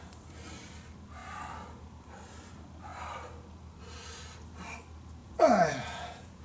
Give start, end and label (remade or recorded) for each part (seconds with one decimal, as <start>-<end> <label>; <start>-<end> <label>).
0.0-5.2 recorded; 5.2-6.4 remade